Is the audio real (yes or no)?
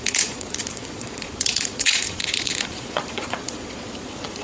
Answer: no